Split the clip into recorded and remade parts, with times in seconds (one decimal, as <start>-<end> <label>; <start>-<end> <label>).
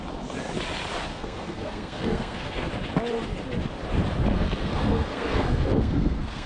0.0-1.1 recorded; 1.1-2.7 remade; 2.7-4.3 recorded; 4.3-6.5 remade